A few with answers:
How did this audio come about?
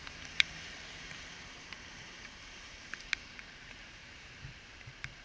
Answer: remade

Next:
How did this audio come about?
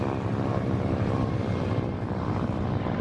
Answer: remade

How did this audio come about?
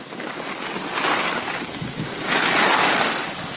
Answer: remade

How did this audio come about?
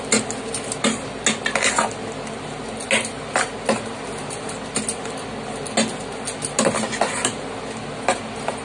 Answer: recorded